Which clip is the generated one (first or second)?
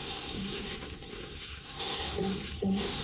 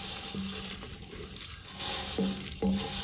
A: first